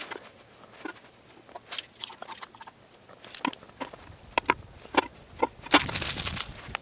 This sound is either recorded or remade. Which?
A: recorded